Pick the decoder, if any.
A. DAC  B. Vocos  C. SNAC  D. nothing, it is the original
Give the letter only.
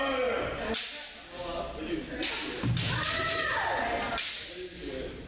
D